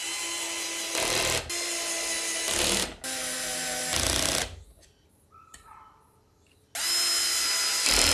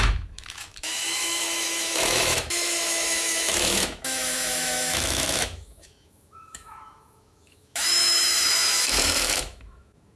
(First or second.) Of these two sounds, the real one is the first